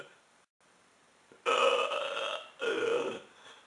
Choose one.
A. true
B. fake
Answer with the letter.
A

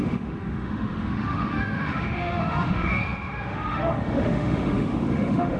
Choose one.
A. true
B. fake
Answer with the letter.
B